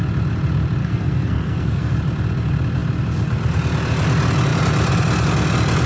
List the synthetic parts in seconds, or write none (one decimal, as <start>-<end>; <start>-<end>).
0.8-1.9